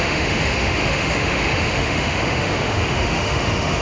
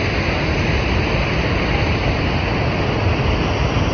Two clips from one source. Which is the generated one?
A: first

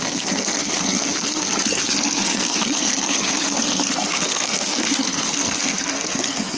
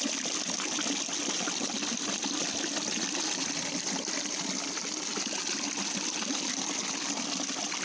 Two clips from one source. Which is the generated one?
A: first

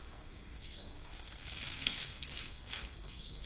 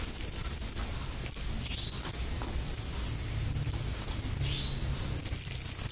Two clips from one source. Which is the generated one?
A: first